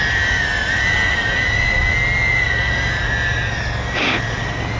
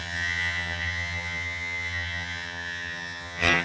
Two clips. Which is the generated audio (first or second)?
second